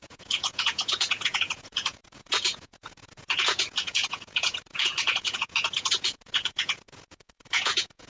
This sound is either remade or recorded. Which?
remade